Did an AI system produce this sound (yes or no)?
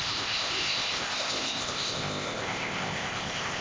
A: yes